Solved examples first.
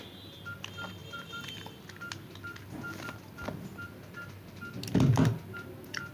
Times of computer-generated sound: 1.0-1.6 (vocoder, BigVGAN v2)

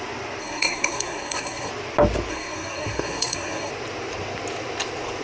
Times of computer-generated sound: 0.4-1.7 (codec, SNAC); 2.3-3.7

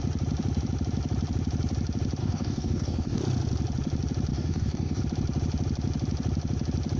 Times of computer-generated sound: 2.2-3.2 (codec, DAC); 4.3-5.0

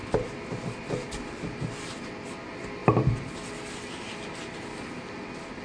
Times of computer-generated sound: none

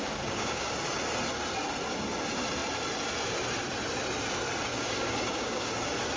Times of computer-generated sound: 0.0-0.7 (codec, DAC); 4.7-5.7

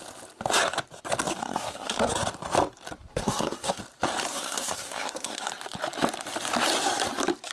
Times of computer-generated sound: 1.4-2.1 (codec, SNAC); 3.1-3.8; 4.3-5.5